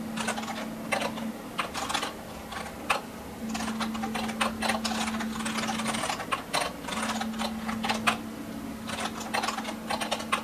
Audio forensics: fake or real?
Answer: real